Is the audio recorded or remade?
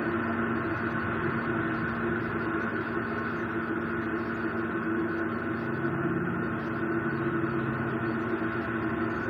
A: recorded